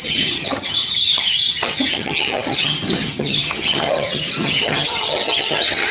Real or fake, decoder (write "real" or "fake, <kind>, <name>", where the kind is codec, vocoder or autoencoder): fake, vocoder, HiFi-GAN